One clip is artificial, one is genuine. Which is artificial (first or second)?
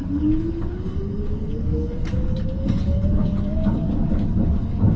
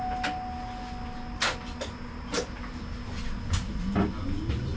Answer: first